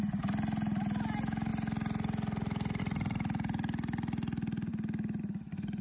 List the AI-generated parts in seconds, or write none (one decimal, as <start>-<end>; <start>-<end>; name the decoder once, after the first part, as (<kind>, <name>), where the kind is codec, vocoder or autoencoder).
none